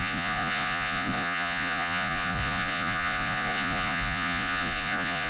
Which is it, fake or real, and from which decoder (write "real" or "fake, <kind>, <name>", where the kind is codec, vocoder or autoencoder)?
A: fake, vocoder, Vocos